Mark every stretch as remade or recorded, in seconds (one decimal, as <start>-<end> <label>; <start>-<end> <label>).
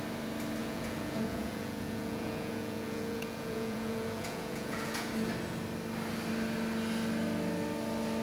0.0-0.6 recorded; 0.6-5.1 remade; 5.1-8.2 recorded